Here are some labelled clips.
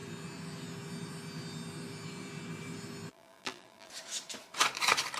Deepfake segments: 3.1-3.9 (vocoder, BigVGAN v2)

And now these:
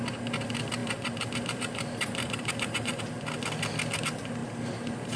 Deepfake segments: 0.8-3.0 (vocoder, BigVGAN v2); 4.4-5.2

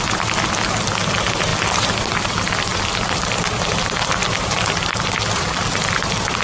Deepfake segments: 1.5-5.3 (vocoder, BigVGAN v2)

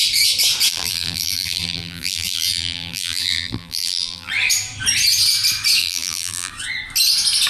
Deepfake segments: 0.7-4.3 (vocoder, BigVGAN v2); 5.8-6.5

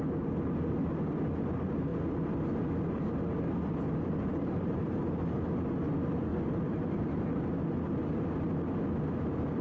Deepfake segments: 4.3-5.0 (vocoder, BigVGAN v2); 6.3-7.4

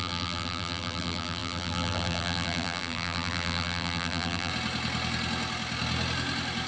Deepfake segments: 0.0-4.5 (vocoder, BigVGAN v2)